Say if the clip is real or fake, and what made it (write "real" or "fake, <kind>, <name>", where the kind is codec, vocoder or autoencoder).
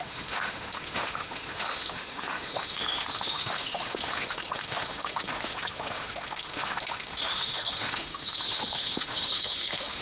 fake, autoencoder, DAC-VAE